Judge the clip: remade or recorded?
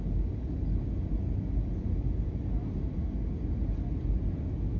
recorded